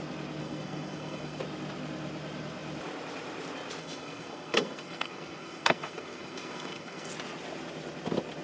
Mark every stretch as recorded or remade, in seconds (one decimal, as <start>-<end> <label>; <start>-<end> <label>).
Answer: 0.0-0.4 recorded; 0.4-1.4 remade; 1.4-3.8 recorded; 3.8-7.1 remade; 7.1-8.4 recorded

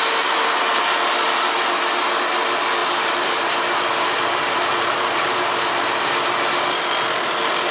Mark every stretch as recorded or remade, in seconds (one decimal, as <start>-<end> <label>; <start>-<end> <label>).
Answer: 0.0-2.8 recorded; 2.8-5.7 remade; 5.7-7.7 recorded

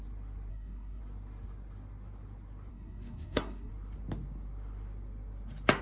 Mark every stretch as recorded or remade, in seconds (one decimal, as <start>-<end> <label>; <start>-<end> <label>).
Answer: 0.0-0.5 recorded; 0.5-1.0 remade; 1.0-2.7 recorded; 2.7-3.7 remade; 3.7-5.8 recorded